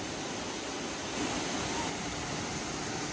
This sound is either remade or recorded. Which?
recorded